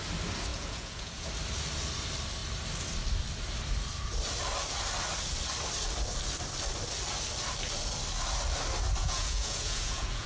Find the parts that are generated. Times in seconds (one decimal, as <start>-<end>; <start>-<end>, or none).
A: 0.5-1.3; 9.0-10.3